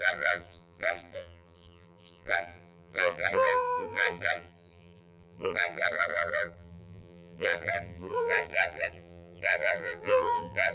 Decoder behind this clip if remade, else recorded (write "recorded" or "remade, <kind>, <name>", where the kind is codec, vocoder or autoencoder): remade, vocoder, BigVGAN v2